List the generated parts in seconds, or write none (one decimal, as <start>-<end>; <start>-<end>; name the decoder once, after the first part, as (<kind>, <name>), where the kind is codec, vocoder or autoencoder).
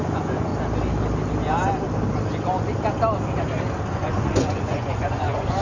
0.0-0.5 (vocoder, Vocos); 3.9-5.6